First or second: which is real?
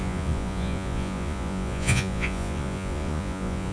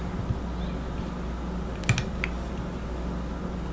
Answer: second